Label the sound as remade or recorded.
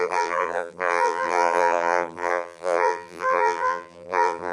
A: remade